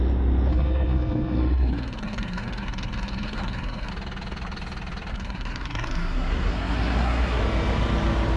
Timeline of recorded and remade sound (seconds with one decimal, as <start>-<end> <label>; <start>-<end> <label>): 0.0-0.5 recorded; 0.5-3.9 remade; 3.9-5.1 recorded; 5.1-7.4 remade; 7.4-8.4 recorded